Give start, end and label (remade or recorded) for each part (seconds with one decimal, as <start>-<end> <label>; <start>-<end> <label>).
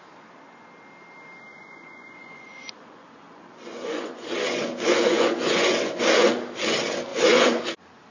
0.0-1.5 recorded; 1.5-6.3 remade; 6.3-7.1 recorded; 7.1-7.6 remade; 7.6-8.1 recorded